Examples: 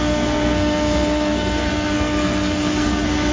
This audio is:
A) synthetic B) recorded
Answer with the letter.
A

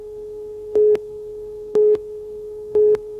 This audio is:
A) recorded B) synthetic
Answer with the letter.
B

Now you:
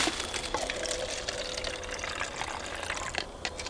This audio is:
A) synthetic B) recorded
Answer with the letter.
B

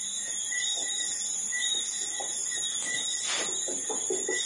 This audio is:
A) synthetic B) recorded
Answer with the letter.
B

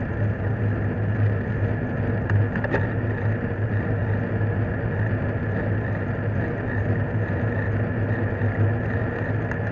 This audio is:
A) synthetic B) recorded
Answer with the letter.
B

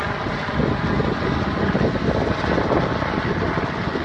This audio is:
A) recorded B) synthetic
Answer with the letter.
A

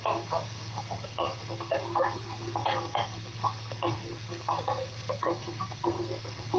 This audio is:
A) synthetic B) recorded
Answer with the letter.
A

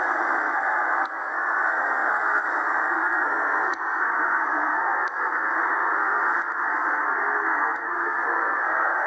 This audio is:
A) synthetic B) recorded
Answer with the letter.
A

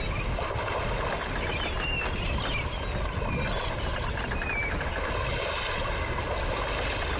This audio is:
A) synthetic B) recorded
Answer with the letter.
B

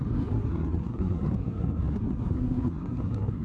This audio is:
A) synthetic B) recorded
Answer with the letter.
A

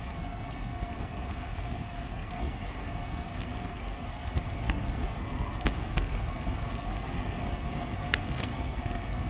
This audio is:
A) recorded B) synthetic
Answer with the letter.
B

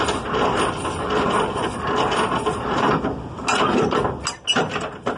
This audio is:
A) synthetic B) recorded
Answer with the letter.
B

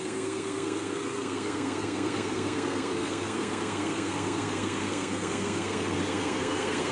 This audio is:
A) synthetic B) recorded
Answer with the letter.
A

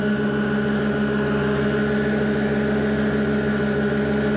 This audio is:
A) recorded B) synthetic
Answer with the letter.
A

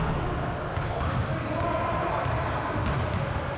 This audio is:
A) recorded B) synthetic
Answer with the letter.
A